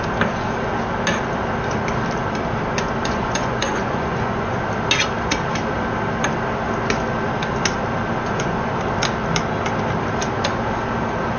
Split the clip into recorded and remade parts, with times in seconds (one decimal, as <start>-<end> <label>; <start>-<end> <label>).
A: 0.0-3.0 recorded; 3.0-4.6 remade; 4.6-8.2 recorded; 8.2-8.7 remade; 8.7-11.4 recorded